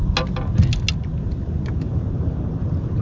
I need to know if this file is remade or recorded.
recorded